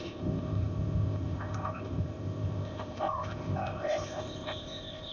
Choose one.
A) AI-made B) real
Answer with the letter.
A